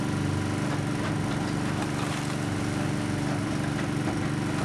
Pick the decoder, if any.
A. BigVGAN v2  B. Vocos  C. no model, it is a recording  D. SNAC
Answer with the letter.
C